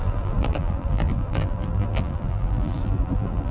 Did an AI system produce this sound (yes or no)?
yes